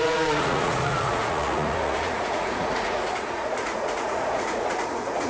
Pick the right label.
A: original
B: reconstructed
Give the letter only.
B